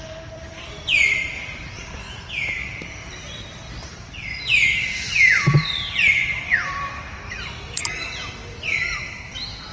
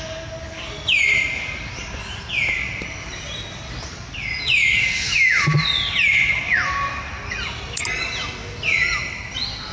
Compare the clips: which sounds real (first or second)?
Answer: second